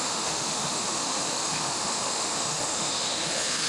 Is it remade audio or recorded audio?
remade